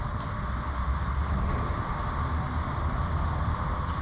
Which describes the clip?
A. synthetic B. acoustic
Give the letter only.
B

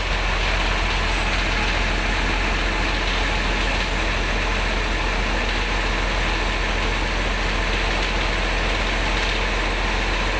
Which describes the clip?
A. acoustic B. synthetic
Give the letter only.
A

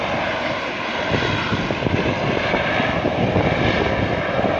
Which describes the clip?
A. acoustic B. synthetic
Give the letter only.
A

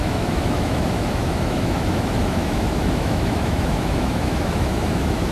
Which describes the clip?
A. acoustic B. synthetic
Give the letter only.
B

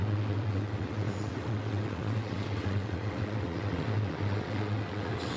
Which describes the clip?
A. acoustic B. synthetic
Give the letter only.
B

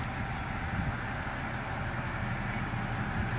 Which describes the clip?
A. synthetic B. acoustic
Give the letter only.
B